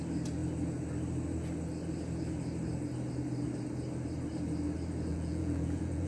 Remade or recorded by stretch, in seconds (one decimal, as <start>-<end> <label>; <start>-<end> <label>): 0.0-5.1 recorded; 5.1-6.1 remade